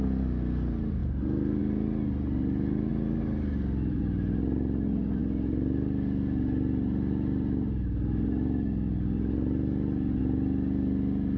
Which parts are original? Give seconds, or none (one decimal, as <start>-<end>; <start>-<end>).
0.0-2.9; 4.0-11.4